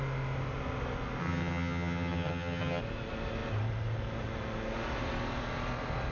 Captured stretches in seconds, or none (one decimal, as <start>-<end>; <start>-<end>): 0.0-1.2; 2.8-6.1